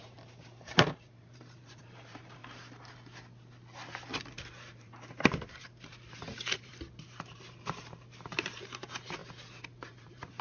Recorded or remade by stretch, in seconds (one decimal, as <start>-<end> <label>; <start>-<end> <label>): 0.0-2.4 remade; 2.4-4.3 recorded; 4.3-9.2 remade; 9.2-9.9 recorded; 9.9-10.4 remade

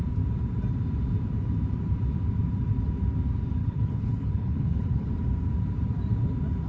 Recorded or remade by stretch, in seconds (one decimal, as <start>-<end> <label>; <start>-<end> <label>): 0.0-3.6 recorded; 3.6-5.1 remade; 5.1-6.7 recorded

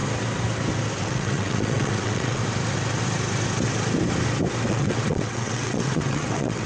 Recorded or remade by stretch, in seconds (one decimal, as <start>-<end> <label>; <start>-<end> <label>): 0.0-1.0 recorded; 1.0-2.4 remade; 2.4-4.7 recorded; 4.7-6.7 remade

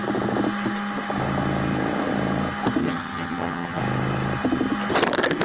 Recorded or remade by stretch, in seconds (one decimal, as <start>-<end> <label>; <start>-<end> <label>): 0.0-2.8 recorded; 2.8-3.8 remade; 3.8-5.4 recorded

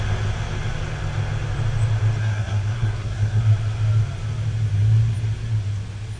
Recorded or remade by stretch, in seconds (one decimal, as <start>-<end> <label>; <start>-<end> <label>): 0.0-2.2 recorded; 2.2-3.4 remade; 3.4-6.2 recorded

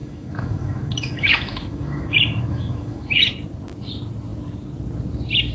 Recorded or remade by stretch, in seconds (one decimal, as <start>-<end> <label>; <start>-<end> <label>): 0.0-3.3 remade; 3.3-5.5 recorded

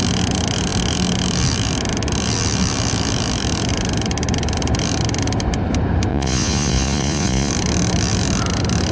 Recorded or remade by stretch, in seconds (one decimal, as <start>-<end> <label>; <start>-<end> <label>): 0.0-6.1 recorded; 6.1-7.5 remade; 7.5-8.9 recorded